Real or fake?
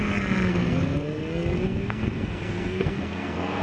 fake